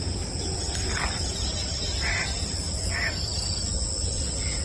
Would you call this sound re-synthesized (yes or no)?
no